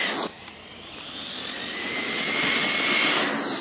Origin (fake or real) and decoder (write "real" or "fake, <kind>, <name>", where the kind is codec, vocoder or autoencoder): real